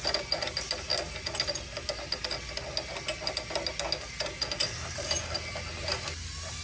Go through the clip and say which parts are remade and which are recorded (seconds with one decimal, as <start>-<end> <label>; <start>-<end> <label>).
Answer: 0.0-6.6 recorded